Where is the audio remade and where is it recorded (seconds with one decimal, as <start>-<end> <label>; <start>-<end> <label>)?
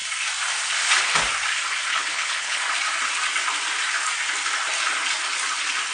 0.0-1.9 recorded; 1.9-2.6 remade; 2.6-5.9 recorded